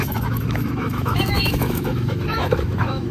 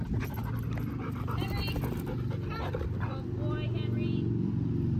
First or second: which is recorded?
second